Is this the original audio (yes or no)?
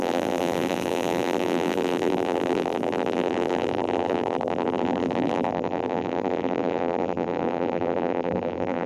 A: no